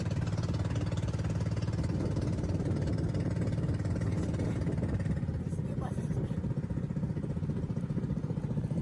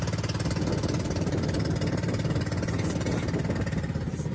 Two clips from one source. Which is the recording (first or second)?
second